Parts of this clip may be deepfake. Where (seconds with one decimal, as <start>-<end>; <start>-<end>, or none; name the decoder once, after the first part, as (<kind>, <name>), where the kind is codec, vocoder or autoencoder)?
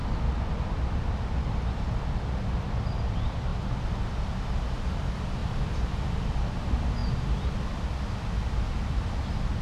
3.5-4.0 (vocoder, BigVGAN v2); 5.4-6.3